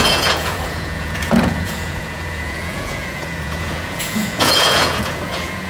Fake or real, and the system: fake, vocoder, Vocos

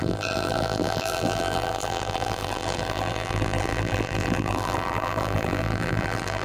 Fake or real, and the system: fake, vocoder, BigVGAN v2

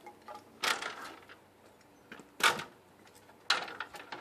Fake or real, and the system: real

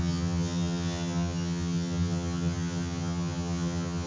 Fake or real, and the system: fake, vocoder, HiFi-GAN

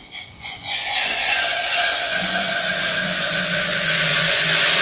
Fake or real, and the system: fake, vocoder, Vocos